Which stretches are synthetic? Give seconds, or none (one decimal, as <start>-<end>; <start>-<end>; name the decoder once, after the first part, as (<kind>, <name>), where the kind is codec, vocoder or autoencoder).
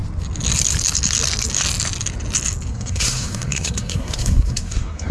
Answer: 2.7-5.1 (codec, SNAC)